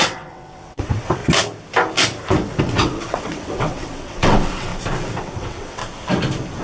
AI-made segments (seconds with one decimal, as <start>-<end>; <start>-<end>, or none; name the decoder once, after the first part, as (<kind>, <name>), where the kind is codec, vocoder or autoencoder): 0.0-1.2 (vocoder, WaveNeXt); 2.6-4.7; 5.2-5.8